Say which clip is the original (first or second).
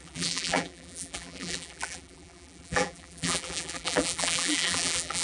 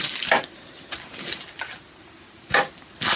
second